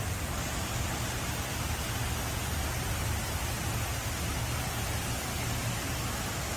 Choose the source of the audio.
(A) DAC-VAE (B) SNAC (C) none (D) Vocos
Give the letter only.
C